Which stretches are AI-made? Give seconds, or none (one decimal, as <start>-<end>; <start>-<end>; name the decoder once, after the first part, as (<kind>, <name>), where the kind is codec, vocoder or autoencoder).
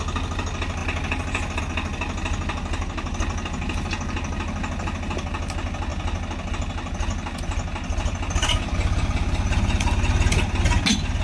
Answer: none